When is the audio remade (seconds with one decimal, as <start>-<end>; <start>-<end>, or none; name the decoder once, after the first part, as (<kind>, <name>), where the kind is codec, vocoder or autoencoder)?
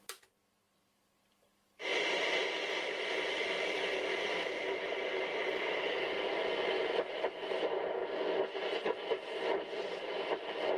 none